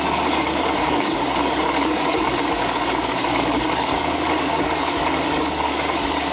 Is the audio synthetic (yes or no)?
yes